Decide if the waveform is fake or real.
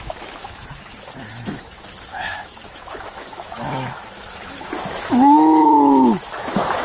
fake